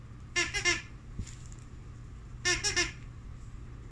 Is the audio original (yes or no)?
yes